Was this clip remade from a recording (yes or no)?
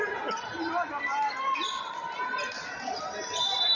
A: no